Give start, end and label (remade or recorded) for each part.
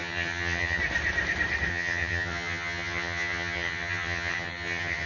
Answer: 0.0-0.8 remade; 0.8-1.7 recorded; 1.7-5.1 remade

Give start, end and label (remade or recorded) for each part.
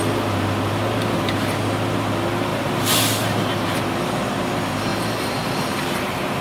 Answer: 0.0-2.5 recorded; 2.5-3.8 remade; 3.8-4.9 recorded; 4.9-6.4 remade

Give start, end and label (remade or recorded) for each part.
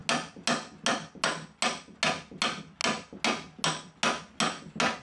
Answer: 0.0-5.0 recorded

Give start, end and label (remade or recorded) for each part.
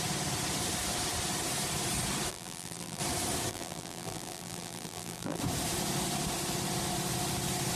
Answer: 0.0-2.3 recorded; 2.3-3.0 remade; 3.0-3.5 recorded; 3.5-5.4 remade; 5.4-7.8 recorded